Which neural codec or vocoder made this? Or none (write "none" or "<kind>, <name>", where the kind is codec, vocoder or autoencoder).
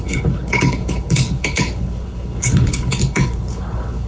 codec, HILCodec